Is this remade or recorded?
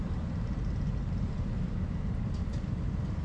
recorded